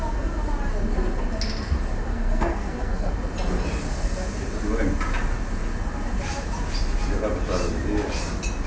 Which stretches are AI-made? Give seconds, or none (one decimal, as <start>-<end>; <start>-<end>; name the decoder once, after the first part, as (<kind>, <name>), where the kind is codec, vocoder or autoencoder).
2.1-3.1 (codec, SNAC)